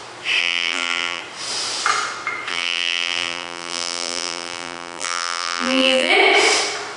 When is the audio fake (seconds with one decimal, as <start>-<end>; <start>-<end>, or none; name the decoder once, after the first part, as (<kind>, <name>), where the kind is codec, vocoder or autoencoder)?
0.4-1.2 (vocoder, BigVGAN v2); 2.5-6.1

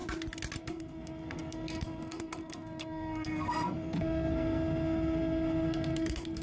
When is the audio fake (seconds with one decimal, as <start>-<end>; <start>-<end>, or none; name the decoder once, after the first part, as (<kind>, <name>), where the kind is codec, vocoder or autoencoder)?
0.6-6.4 (codec, SNAC)